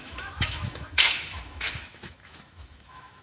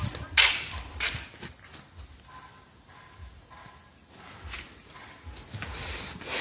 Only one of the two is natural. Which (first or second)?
second